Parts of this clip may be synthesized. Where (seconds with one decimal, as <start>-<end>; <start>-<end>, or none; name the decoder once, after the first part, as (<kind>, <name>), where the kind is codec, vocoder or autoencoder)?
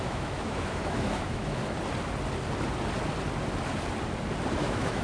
0.0-1.6 (autoencoder, DAC-VAE); 4.6-5.0